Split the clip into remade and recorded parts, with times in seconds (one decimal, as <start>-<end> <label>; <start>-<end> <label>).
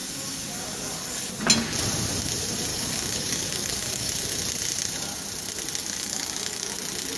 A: 0.0-1.3 remade; 1.3-2.7 recorded; 2.7-4.1 remade; 4.1-5.8 recorded; 5.8-6.7 remade; 6.7-7.2 recorded